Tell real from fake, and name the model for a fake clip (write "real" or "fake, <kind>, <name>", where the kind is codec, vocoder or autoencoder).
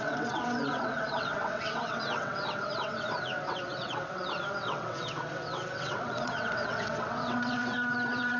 fake, vocoder, WaveNeXt